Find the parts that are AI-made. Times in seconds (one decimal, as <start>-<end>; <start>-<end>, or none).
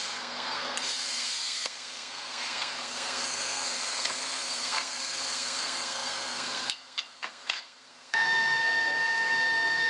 0.0-9.9